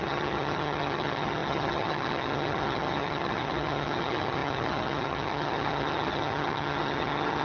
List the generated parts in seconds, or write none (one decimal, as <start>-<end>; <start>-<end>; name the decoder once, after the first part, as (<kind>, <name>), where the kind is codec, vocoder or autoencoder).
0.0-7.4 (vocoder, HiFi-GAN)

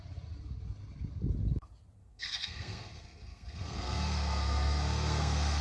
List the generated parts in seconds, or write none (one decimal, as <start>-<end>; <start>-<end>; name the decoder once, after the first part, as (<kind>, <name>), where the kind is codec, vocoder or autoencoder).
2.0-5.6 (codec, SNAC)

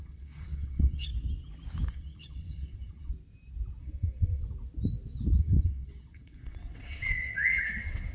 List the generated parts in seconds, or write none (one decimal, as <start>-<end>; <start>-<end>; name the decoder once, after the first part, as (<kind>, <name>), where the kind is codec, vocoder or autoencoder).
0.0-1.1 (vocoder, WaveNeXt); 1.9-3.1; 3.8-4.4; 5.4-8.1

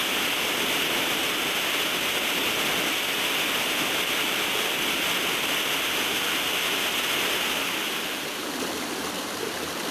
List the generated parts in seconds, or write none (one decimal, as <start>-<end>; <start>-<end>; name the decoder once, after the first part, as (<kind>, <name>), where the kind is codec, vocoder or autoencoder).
none

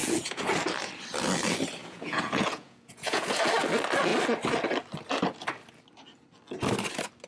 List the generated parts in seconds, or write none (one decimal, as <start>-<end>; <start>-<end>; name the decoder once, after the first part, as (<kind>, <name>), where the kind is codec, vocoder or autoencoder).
0.0-0.5 (vocoder, Vocos); 1.8-3.4

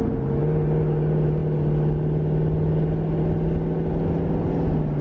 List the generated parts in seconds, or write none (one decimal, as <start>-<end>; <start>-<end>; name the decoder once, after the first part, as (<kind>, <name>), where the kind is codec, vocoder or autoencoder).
none

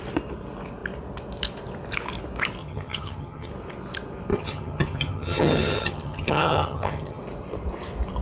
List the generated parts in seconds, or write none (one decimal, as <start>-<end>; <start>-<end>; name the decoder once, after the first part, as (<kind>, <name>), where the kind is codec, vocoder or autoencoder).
2.6-3.5 (vocoder, HiFi-GAN); 4.3-7.2